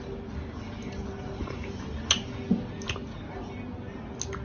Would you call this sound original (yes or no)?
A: yes